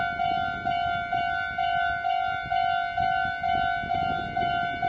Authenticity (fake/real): real